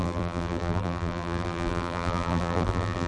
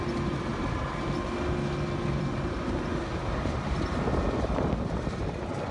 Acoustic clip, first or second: second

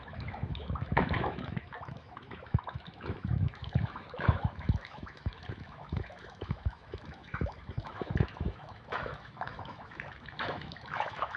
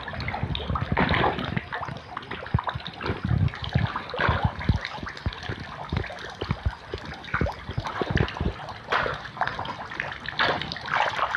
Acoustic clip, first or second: second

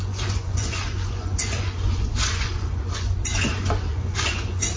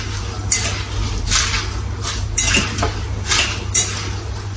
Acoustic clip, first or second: second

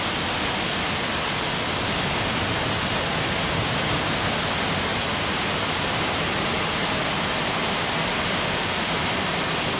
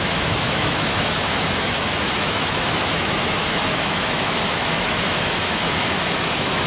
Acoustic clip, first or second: first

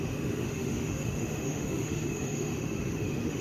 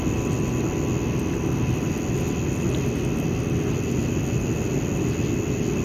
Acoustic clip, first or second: second